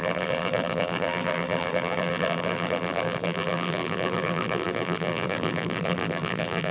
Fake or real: fake